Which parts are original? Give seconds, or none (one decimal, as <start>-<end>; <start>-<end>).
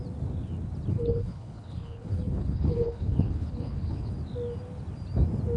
0.0-0.9; 4.1-5.6